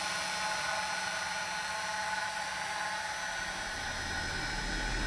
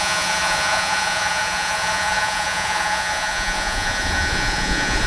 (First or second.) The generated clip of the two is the second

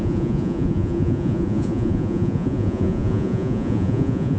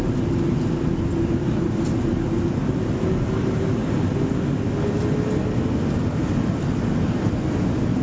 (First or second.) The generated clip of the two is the first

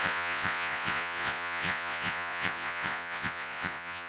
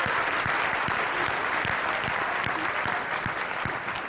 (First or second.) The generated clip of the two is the first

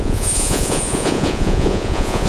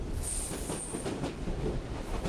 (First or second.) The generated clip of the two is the first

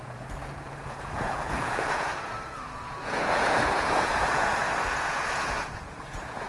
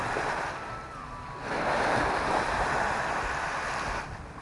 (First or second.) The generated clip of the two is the first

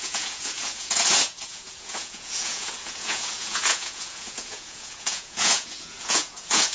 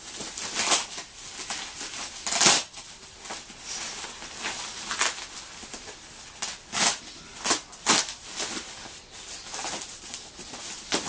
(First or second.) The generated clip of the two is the first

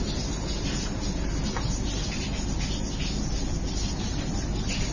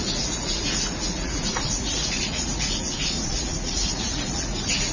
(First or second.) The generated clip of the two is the second